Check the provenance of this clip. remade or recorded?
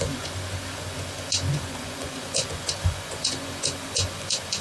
remade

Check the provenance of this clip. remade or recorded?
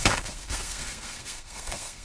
remade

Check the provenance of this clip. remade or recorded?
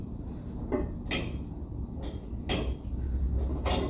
recorded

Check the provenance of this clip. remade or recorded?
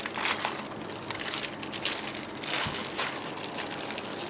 recorded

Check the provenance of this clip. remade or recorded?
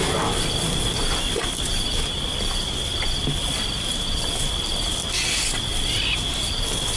recorded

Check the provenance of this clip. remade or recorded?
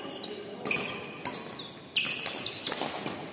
recorded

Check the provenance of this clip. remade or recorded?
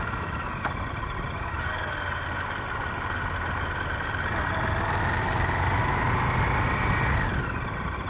recorded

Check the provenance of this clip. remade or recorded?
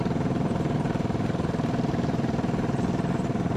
recorded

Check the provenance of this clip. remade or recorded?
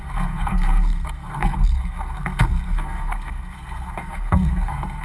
remade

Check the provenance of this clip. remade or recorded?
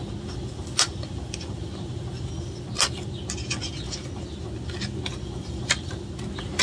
recorded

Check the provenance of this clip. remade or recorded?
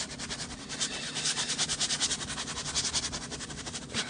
recorded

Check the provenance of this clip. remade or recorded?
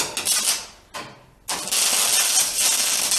recorded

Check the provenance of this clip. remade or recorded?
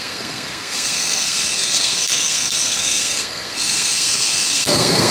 remade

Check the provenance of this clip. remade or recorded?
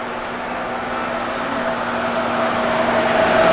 recorded